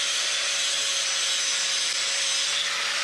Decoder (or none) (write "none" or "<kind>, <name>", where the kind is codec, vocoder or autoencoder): none